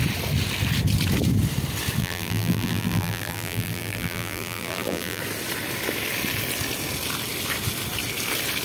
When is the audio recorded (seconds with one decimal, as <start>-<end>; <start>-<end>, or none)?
0.0-2.0; 5.2-8.6